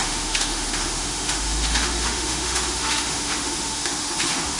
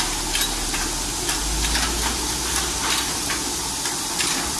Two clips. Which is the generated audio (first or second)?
first